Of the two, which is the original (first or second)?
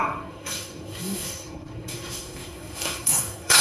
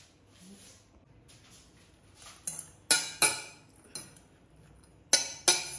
second